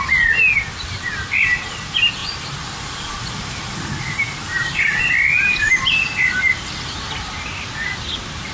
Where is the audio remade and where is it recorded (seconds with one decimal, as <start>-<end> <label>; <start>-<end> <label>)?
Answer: 0.0-2.2 recorded; 2.2-3.9 remade; 3.9-8.5 recorded